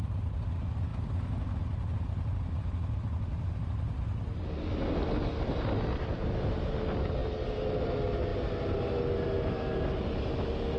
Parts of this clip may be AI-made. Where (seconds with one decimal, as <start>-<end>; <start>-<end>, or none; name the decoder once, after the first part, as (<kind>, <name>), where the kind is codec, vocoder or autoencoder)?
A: none